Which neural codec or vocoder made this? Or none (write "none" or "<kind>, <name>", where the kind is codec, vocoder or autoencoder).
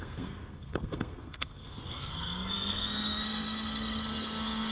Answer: codec, SNAC